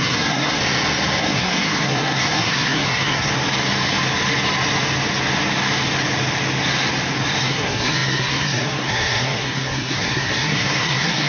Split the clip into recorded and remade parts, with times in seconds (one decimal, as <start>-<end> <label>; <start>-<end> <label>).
0.0-0.6 remade; 0.6-1.2 recorded; 1.2-3.3 remade; 3.3-7.4 recorded; 7.4-11.3 remade